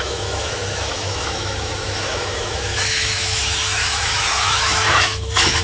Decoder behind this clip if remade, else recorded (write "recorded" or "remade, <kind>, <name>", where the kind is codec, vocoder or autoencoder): remade, autoencoder, DAC-VAE